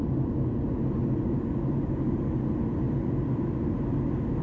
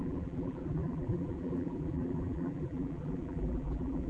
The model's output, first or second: second